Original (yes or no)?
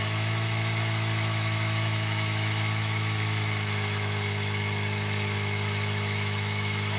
no